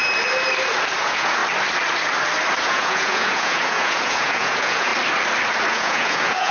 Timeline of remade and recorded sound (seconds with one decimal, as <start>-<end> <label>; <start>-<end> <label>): 0.0-1.0 recorded; 1.0-1.4 remade; 1.4-2.6 recorded; 2.6-4.9 remade; 4.9-5.7 recorded; 5.7-6.5 remade